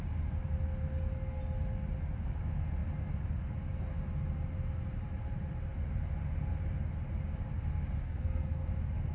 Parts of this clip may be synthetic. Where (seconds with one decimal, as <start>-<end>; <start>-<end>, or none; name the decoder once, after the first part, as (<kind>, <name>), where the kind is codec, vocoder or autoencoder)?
8.0-8.7 (codec, SNAC)